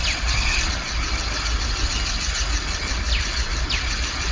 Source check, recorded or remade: recorded